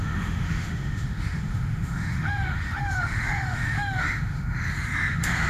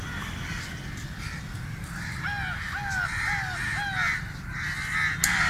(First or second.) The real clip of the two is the second